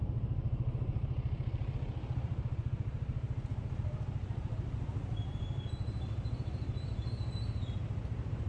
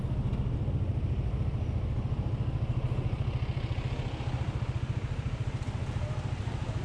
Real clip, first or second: second